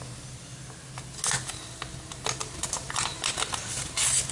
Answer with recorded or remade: recorded